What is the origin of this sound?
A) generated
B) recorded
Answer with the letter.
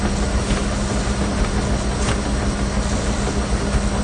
B